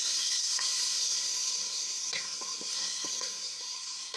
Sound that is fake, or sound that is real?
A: fake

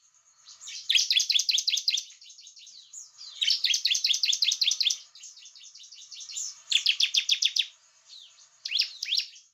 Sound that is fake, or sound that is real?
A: fake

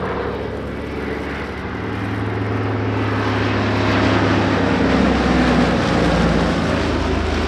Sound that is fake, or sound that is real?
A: real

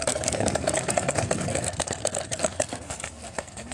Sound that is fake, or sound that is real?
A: fake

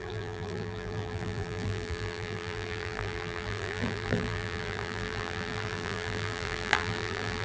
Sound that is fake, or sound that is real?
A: fake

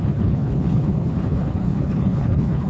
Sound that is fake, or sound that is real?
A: fake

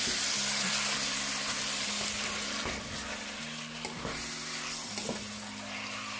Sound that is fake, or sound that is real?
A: real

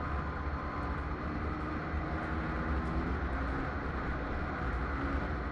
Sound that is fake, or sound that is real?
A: real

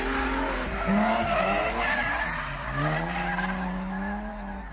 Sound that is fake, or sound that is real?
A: real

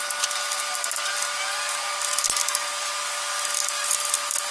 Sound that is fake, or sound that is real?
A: real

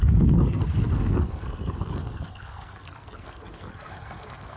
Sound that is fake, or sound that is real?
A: fake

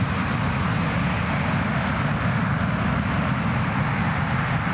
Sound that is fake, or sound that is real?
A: real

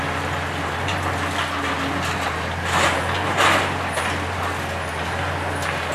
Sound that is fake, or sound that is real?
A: real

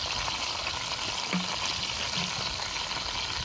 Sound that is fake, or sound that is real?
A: real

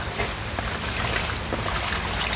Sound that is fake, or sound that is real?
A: real